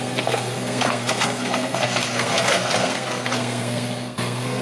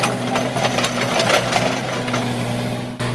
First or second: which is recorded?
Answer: second